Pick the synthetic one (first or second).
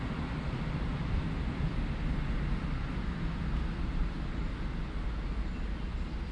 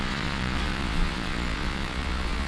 second